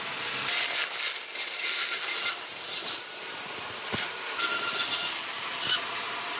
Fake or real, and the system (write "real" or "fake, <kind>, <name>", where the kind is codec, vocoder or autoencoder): real